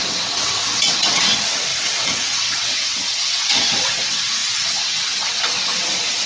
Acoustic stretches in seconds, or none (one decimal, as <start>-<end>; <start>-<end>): none